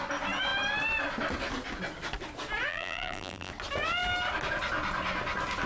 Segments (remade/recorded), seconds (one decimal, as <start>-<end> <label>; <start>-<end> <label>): 0.0-2.7 recorded; 2.7-3.5 remade; 3.5-5.7 recorded